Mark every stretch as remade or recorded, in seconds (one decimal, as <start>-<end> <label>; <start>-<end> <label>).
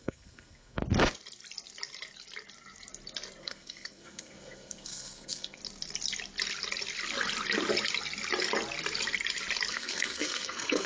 0.0-0.8 remade; 0.8-3.4 recorded; 3.4-5.6 remade; 5.6-9.7 recorded; 9.7-10.9 remade